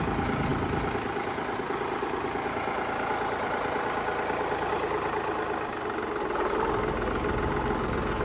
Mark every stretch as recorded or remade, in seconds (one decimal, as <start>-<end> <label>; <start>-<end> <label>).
0.0-8.2 recorded